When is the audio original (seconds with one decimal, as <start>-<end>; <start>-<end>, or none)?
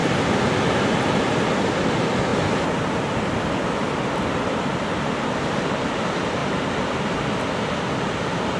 1.7-2.3; 5.6-8.6